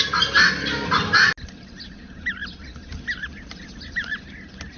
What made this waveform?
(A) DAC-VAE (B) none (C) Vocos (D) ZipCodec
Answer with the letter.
B